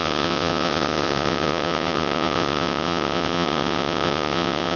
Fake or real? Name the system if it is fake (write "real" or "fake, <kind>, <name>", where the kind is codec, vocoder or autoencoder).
fake, vocoder, WaveNeXt